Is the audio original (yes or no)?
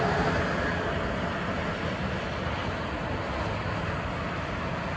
yes